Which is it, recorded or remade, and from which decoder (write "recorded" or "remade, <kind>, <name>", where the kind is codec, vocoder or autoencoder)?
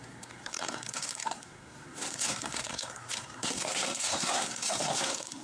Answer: remade, codec, SNAC